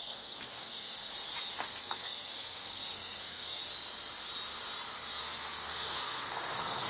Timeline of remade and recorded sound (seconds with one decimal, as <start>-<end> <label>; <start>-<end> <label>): 0.0-1.1 remade; 1.1-1.8 recorded; 1.8-3.6 remade; 3.6-5.2 recorded; 5.2-6.9 remade